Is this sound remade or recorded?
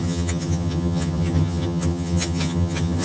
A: remade